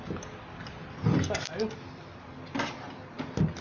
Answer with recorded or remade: recorded